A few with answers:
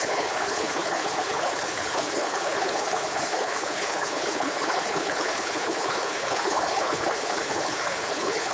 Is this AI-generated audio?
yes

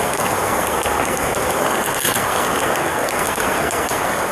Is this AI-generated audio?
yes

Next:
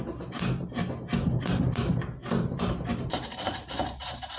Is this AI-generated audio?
no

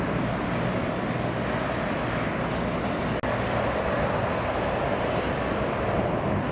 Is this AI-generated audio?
no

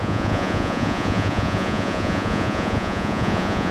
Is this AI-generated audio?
yes